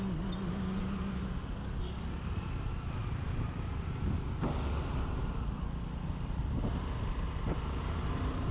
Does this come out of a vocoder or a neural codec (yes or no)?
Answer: no